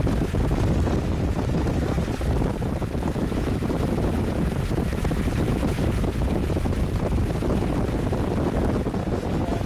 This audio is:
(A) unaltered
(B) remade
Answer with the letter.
A